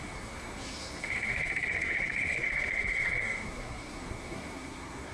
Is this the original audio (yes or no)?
no